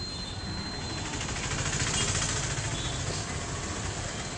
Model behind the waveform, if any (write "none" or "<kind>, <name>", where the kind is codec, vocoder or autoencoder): none